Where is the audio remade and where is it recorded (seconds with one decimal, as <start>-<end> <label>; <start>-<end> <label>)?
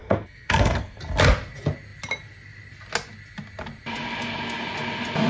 0.0-1.0 remade; 1.0-5.3 recorded